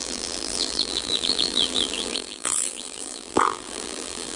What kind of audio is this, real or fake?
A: fake